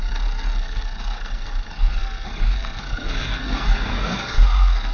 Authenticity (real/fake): fake